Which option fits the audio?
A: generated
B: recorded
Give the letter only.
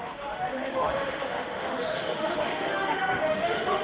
A